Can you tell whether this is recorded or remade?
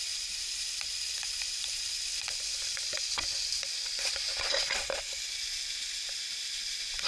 recorded